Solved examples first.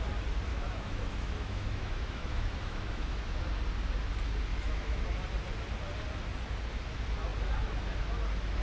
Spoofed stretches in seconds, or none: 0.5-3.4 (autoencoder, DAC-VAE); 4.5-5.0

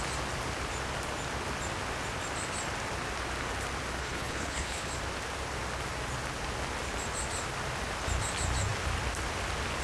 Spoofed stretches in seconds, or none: 4.0-4.9 (codec, HILCodec)

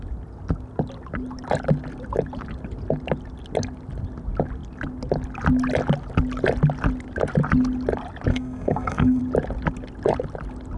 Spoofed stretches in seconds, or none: 8.3-9.2 (codec, SNAC)

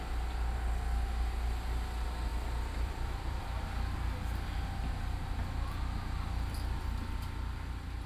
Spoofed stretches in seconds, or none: 2.3-3.4 (vocoder, BigVGAN v2)

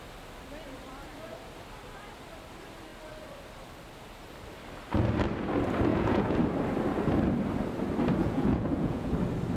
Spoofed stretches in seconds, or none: 5.9-6.4 (vocoder, Vocos); 8.2-9.1